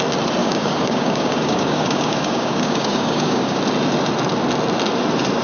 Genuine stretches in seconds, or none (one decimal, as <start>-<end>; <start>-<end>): 0.0-0.4; 3.6-5.4